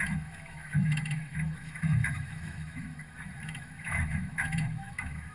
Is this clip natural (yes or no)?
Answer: no